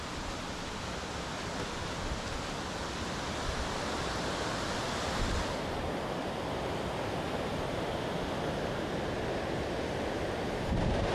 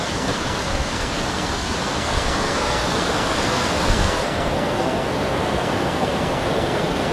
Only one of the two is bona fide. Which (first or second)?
first